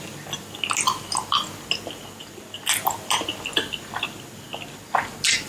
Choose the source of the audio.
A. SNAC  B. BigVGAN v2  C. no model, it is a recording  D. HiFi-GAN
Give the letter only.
C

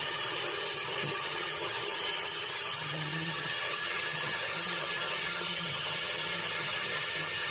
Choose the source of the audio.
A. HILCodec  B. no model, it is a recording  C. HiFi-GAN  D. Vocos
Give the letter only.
C